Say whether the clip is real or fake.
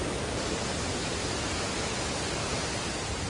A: real